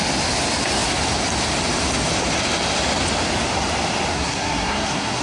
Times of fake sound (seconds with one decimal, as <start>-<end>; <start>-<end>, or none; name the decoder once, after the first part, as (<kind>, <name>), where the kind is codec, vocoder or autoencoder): 4.1-5.2 (codec, SNAC)